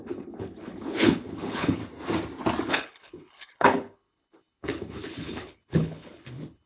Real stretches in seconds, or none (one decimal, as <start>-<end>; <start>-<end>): 1.8-2.7